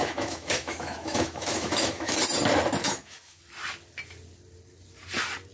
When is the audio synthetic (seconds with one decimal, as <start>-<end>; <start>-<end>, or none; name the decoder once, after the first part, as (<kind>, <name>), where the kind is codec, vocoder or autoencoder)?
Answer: 0.0-2.2 (autoencoder, DAC-VAE); 2.8-3.4